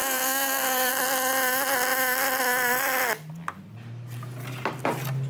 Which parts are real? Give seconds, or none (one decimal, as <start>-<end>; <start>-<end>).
0.9-5.3